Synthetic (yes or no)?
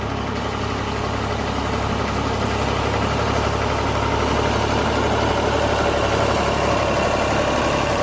no